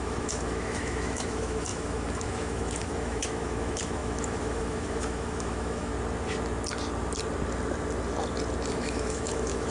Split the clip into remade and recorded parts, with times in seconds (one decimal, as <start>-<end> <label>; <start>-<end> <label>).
0.0-5.9 remade; 5.9-8.7 recorded; 8.7-9.7 remade

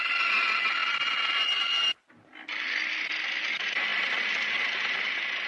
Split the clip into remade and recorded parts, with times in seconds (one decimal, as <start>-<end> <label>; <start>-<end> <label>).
0.0-5.5 recorded

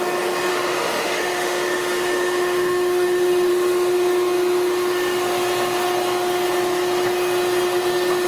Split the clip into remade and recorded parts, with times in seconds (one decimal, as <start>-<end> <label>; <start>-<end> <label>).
0.0-0.5 recorded; 0.5-3.5 remade; 3.5-8.3 recorded

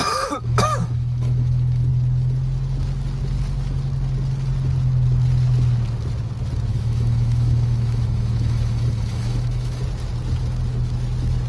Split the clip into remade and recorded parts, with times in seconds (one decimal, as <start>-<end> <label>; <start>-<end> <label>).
0.0-1.9 remade; 1.9-6.7 recorded; 6.7-9.8 remade; 9.8-11.5 recorded